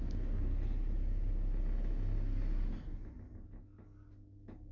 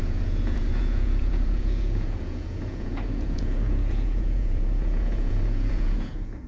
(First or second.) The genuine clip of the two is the first